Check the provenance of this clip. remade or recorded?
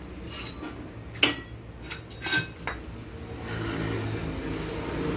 recorded